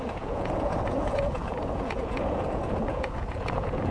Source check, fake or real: fake